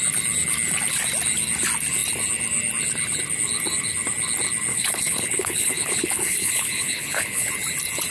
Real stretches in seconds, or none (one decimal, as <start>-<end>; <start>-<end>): 0.0-4.7; 7.5-8.1